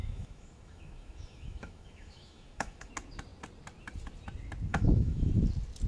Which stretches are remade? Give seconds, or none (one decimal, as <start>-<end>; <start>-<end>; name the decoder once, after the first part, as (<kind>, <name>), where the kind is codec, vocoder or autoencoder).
0.0-2.9 (autoencoder, DAC-VAE); 4.7-5.3